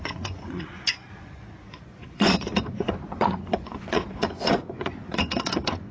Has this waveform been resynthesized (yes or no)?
yes